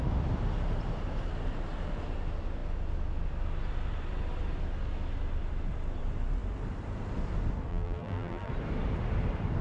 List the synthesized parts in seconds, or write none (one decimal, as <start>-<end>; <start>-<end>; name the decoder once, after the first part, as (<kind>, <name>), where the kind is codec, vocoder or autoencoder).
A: 7.7-8.5 (vocoder, BigVGAN v2)